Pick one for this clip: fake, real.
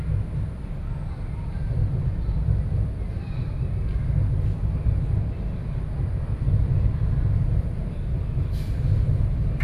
real